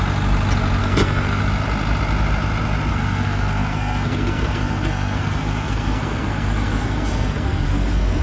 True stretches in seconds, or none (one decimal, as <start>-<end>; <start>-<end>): 0.0-0.8; 1.4-2.9